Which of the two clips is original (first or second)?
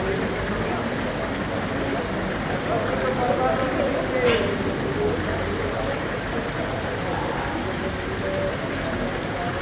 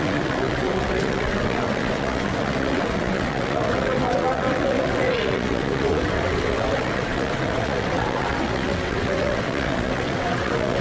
first